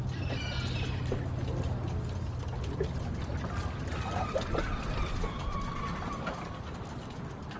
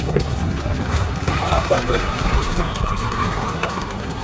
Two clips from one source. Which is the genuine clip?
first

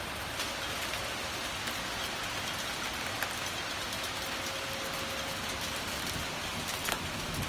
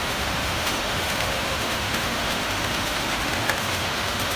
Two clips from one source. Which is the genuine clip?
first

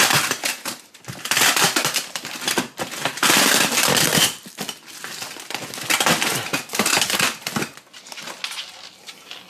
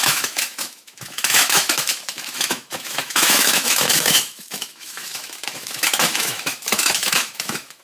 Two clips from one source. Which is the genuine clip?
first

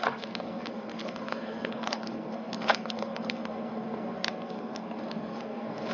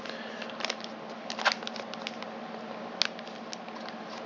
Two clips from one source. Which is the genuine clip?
second